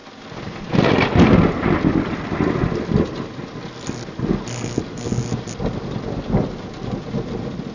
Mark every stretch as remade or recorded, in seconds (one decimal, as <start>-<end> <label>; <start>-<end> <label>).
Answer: 0.0-7.7 recorded